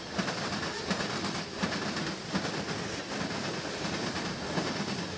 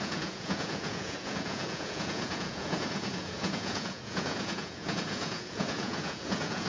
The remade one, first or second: second